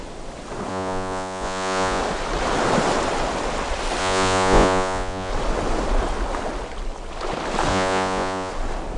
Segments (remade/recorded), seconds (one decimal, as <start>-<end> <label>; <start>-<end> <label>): 0.0-0.7 recorded; 0.7-2.0 remade; 2.0-4.0 recorded; 4.0-5.3 remade; 5.3-7.7 recorded; 7.7-8.5 remade; 8.5-9.0 recorded